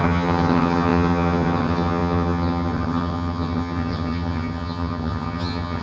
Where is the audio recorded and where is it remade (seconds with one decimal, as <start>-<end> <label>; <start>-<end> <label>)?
0.0-5.8 remade